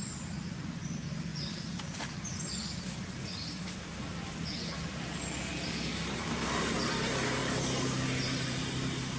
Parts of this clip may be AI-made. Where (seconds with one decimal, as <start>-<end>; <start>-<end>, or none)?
none